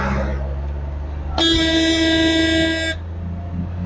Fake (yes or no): no